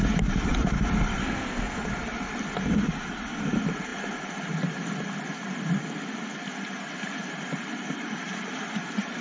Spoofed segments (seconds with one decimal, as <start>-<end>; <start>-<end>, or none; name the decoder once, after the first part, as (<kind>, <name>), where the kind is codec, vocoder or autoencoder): 1.2-1.8 (codec, SNAC)